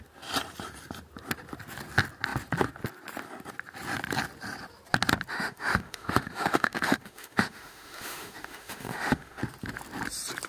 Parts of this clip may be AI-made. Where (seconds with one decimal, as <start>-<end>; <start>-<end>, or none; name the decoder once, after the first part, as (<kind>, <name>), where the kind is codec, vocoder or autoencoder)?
5.3-9.4 (autoencoder, DAC-VAE)